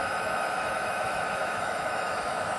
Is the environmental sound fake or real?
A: fake